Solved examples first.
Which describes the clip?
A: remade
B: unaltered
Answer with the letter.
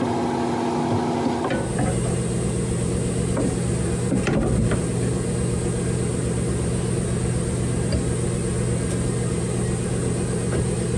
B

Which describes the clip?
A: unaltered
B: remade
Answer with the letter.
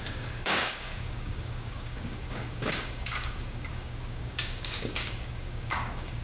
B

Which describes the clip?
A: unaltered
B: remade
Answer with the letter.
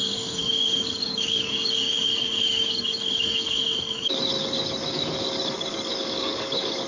B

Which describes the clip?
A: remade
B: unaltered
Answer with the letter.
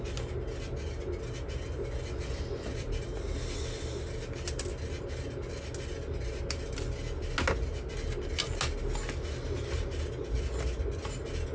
B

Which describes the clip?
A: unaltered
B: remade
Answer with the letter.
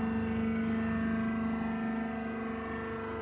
A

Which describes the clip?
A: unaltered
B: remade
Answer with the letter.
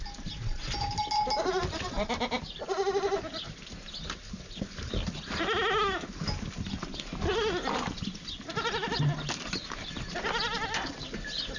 A